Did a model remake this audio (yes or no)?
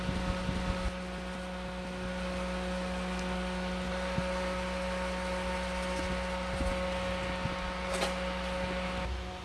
no